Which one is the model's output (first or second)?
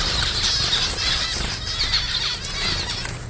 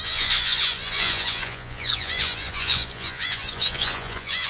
second